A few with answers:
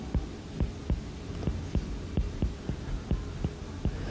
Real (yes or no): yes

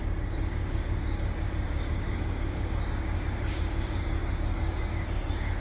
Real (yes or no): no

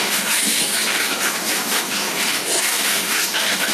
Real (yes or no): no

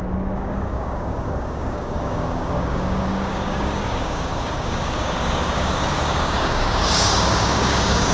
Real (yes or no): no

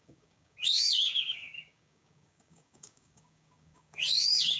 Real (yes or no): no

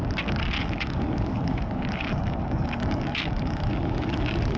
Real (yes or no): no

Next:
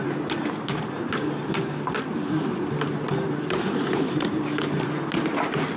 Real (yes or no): yes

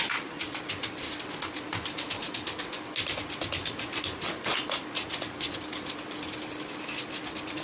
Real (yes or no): yes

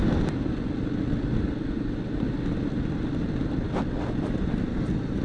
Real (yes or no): yes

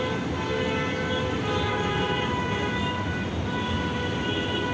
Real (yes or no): yes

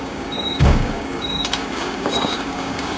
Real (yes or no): no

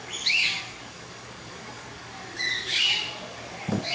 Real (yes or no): no